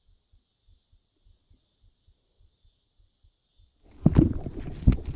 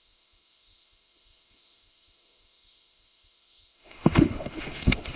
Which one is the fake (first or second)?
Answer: second